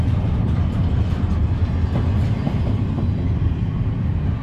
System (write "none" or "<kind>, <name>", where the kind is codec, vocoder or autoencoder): none